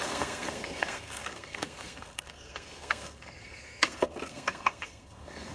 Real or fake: fake